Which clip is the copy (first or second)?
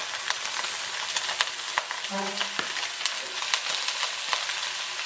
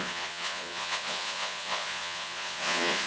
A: second